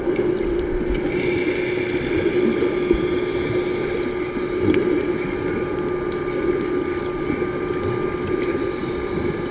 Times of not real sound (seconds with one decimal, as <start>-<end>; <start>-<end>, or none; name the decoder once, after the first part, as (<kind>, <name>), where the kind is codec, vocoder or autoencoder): none